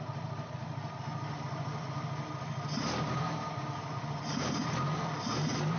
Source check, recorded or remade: recorded